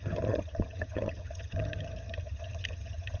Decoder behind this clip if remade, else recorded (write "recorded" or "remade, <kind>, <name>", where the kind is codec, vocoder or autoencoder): remade, vocoder, HiFi-GAN